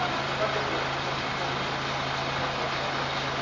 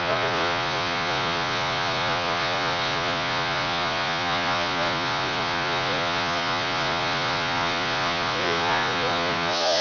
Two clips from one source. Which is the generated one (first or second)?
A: second